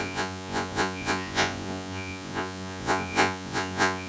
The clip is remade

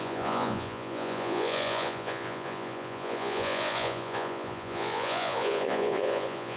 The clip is remade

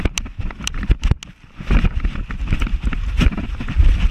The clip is recorded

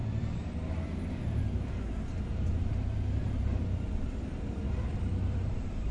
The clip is remade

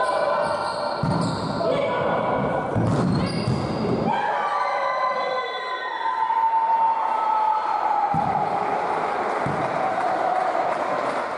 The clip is recorded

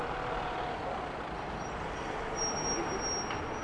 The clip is recorded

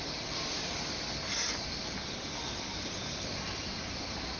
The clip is recorded